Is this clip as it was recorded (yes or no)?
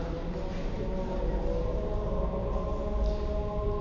yes